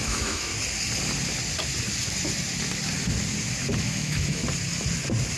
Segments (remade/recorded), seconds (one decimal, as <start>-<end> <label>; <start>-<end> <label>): 0.0-0.5 remade; 0.5-3.7 recorded; 3.7-4.4 remade; 4.4-5.4 recorded